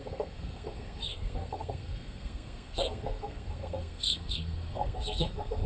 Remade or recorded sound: remade